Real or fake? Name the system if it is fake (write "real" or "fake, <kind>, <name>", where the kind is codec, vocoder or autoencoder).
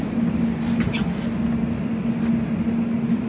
real